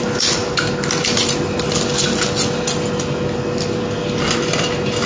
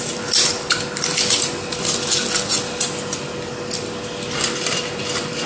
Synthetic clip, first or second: second